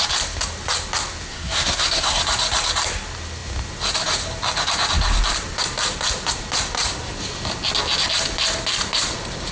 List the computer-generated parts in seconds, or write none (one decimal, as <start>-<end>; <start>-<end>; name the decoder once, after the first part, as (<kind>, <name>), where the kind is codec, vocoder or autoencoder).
1.3-2.2 (codec, SNAC)

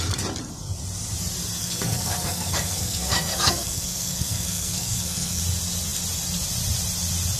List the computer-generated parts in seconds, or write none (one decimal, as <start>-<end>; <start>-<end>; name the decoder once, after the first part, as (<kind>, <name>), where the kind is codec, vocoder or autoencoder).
1.6-5.4 (codec, SNAC)

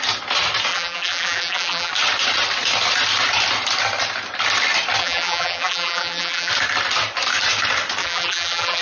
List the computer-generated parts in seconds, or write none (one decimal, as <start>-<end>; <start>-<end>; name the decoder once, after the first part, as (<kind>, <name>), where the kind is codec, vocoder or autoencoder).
0.7-1.9 (vocoder, BigVGAN v2); 5.0-6.5; 8.0-8.8